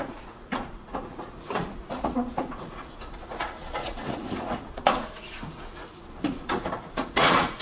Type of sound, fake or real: fake